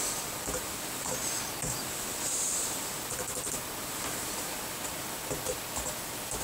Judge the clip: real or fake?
fake